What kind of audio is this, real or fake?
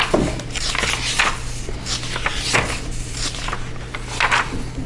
real